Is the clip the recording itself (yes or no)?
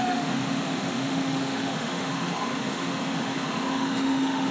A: no